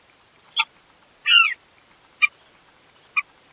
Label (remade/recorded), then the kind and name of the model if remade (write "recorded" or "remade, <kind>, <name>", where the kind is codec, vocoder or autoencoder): recorded